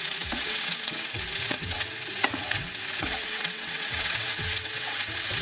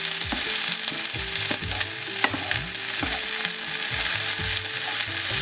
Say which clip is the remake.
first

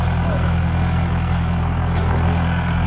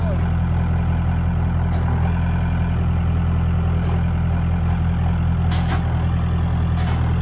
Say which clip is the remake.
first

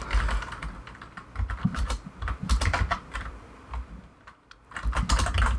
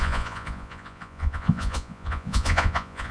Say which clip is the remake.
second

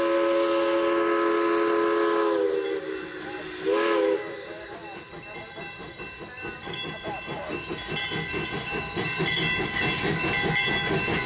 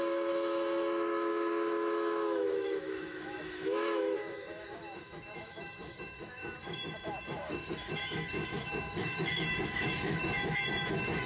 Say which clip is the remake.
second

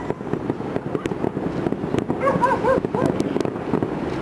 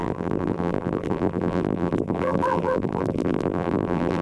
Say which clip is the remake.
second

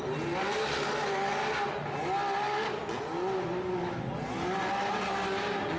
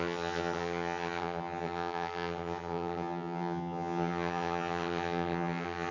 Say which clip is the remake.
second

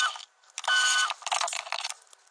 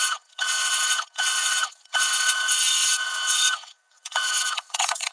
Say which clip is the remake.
second